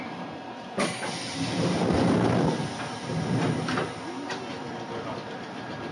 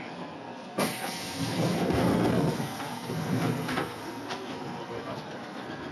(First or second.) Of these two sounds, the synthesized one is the second